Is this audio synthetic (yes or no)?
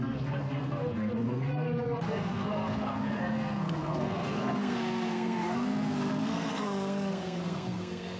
yes